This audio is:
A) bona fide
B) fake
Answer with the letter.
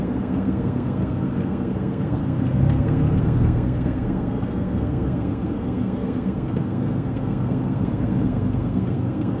B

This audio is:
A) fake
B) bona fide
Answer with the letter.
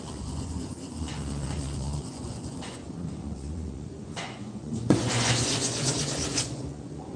A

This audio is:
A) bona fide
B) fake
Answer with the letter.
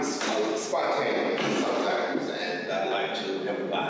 A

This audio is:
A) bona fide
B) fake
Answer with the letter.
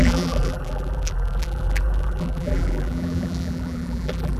B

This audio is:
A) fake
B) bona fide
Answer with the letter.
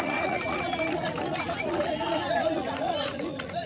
A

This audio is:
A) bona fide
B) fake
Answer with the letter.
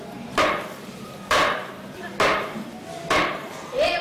B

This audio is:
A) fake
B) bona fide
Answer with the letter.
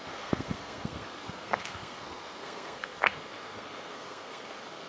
A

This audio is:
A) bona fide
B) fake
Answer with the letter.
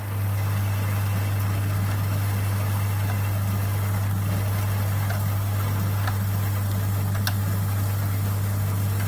A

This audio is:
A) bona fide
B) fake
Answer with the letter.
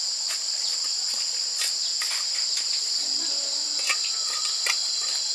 A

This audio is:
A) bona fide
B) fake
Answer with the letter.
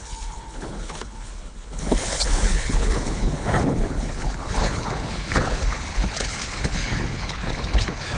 B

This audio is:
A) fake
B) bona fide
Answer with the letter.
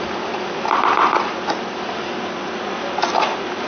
B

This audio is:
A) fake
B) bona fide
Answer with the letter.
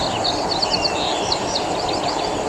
B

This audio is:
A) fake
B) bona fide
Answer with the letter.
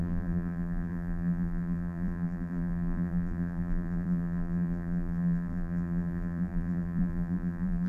A